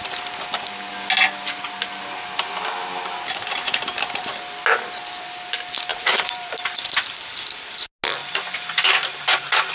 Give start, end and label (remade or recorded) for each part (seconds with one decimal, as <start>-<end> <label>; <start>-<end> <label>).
0.0-5.9 recorded; 5.9-6.5 remade; 6.5-9.7 recorded